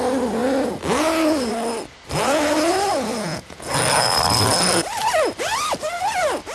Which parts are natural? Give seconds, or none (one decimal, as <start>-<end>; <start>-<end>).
0.0-3.1; 3.7-6.5